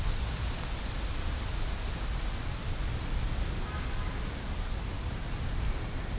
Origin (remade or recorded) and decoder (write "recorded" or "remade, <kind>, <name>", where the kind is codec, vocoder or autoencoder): recorded